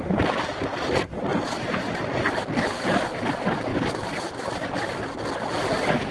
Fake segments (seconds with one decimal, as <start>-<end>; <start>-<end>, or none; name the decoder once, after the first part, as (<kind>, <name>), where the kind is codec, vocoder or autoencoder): 1.3-1.9 (vocoder, BigVGAN v2); 3.7-4.5